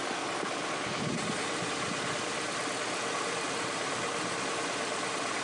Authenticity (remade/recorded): recorded